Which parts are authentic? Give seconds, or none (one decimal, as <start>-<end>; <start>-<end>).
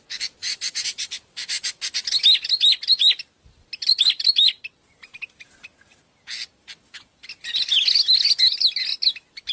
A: 0.0-0.4; 1.8-9.5